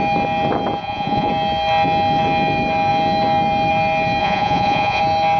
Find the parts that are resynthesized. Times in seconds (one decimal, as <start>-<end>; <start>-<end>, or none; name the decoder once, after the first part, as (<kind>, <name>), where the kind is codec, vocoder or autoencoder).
0.8-1.3 (vocoder, Vocos); 4.2-5.0